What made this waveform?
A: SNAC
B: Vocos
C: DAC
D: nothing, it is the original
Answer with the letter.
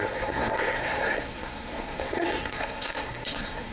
A